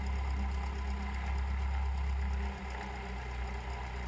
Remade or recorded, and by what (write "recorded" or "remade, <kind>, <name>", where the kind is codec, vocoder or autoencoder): recorded